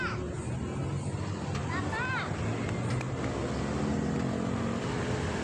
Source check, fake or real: real